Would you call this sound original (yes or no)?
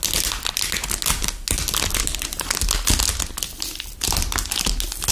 yes